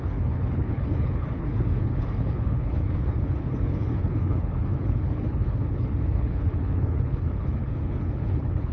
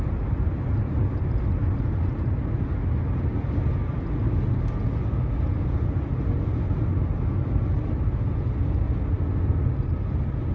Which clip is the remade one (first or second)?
first